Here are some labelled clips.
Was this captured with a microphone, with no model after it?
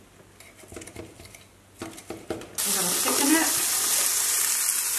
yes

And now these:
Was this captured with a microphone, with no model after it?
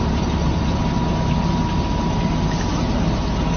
yes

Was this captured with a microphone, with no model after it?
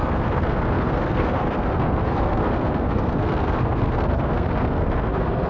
no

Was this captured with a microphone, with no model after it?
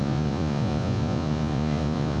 no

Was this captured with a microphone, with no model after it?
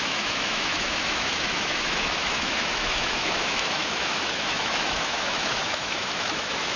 no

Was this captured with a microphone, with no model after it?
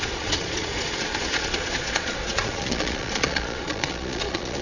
no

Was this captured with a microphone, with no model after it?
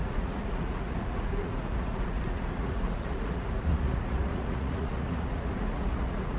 no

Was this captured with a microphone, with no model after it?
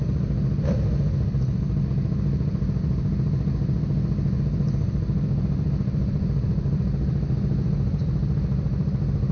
yes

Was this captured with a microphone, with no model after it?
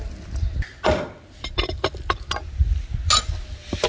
yes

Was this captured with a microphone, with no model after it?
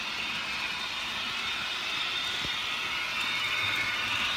yes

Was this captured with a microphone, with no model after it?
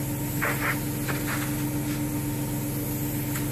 yes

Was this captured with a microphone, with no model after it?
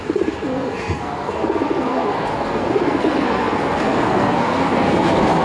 no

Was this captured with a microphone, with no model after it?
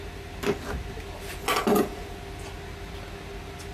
yes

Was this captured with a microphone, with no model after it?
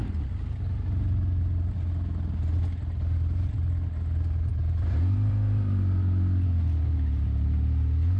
yes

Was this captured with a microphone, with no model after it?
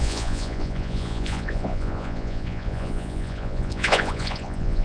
no